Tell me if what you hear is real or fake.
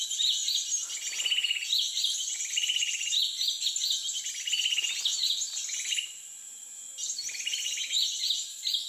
real